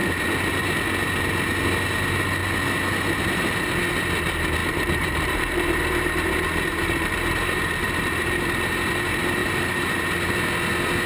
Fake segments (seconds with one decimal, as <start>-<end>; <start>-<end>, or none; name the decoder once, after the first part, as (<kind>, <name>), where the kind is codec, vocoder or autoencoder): 4.6-9.0 (vocoder, BigVGAN v2); 9.4-10.1